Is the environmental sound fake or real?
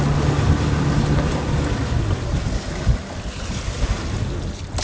real